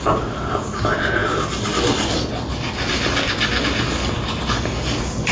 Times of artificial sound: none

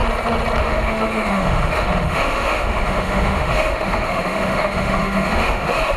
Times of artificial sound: 0.6-6.0 (autoencoder, DAC-VAE)

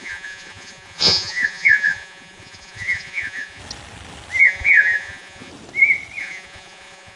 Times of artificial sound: 0.0-3.6 (vocoder, Vocos); 4.4-5.5; 6.2-7.2

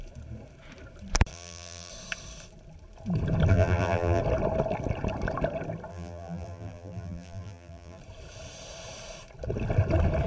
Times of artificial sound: 1.3-1.9 (vocoder, BigVGAN v2); 3.5-4.2; 5.9-8.0